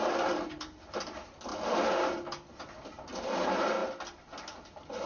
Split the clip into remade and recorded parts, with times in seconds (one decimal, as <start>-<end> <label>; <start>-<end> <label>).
0.0-1.5 remade; 1.5-2.8 recorded; 2.8-3.8 remade; 3.8-5.1 recorded

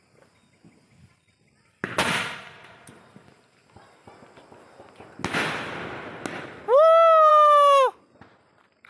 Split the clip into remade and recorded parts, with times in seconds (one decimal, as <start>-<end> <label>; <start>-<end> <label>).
0.0-7.3 recorded; 7.3-8.0 remade; 8.0-8.9 recorded

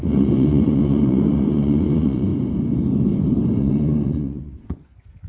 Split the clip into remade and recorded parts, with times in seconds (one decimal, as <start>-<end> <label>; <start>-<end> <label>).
0.0-2.3 remade; 2.3-3.6 recorded; 3.6-5.3 remade

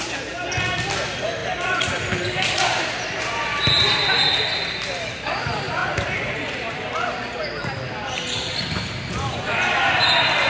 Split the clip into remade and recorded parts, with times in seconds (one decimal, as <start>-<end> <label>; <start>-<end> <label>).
0.0-10.5 recorded